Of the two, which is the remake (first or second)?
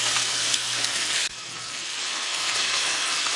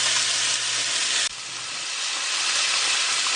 first